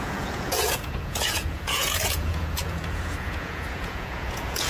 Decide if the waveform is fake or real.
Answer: fake